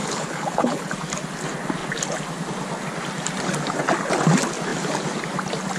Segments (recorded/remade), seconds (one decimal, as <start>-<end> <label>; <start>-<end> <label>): 0.0-0.9 remade; 0.9-5.8 recorded